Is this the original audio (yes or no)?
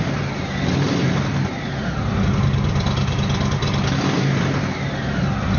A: yes